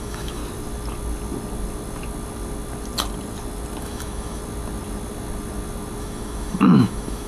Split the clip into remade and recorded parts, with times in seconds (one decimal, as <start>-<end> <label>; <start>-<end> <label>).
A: 0.0-0.4 remade; 0.4-3.8 recorded; 3.8-4.4 remade; 4.4-6.0 recorded; 6.0-7.3 remade